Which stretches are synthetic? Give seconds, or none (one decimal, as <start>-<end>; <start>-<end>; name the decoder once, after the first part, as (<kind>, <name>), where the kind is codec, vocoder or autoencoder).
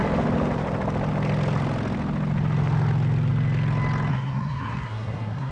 4.1-5.5 (codec, SNAC)